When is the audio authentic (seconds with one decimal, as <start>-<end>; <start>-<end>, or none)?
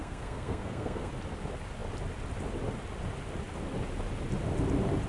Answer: 1.1-5.1